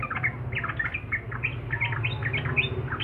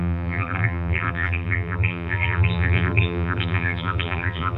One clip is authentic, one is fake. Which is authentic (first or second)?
first